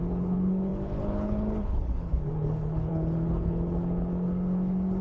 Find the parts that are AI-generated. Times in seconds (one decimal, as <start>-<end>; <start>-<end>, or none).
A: 0.0-5.0